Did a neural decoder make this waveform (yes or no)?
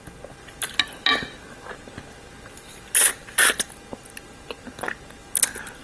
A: no